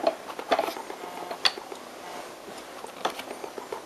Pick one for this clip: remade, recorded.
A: recorded